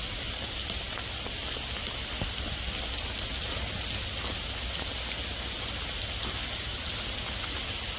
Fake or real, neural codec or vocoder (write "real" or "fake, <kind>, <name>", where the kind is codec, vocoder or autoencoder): real